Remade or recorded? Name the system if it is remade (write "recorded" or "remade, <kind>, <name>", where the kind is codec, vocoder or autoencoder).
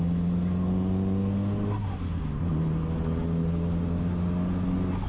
recorded